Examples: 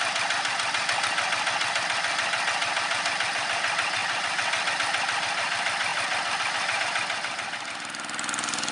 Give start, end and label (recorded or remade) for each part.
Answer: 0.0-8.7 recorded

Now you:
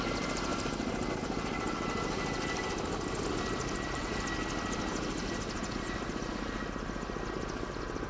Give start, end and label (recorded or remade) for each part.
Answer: 0.0-8.1 recorded

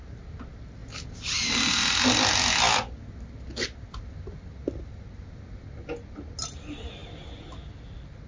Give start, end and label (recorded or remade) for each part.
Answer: 0.0-8.3 recorded

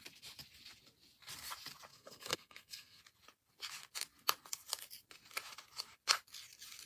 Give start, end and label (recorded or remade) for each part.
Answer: 0.0-1.9 recorded; 1.9-3.0 remade; 3.0-6.9 recorded

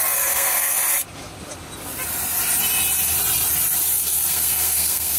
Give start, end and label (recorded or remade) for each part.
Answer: 0.0-0.8 remade; 0.8-3.9 recorded; 3.9-5.2 remade

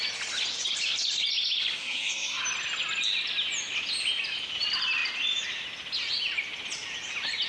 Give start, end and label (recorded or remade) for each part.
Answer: 0.0-1.8 recorded; 1.8-2.4 remade; 2.4-7.5 recorded